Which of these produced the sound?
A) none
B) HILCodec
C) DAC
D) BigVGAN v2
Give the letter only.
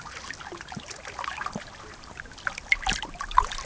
A